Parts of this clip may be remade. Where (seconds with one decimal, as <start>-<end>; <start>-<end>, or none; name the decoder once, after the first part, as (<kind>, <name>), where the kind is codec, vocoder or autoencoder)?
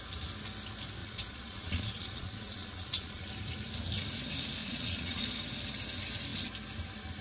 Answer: 1.0-3.3 (vocoder, Vocos); 4.6-5.2